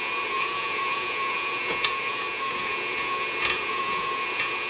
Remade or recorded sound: remade